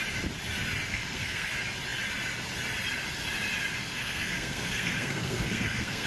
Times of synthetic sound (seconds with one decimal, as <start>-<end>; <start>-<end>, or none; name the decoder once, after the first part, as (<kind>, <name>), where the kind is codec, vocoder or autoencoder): 0.9-1.5 (codec, SNAC); 3.8-6.1